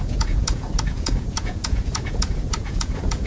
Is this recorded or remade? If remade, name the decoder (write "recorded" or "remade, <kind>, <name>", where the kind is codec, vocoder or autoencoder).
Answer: remade, vocoder, Vocos